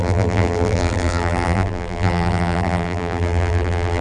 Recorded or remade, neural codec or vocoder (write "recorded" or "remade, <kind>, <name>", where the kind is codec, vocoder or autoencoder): remade, vocoder, BigVGAN v2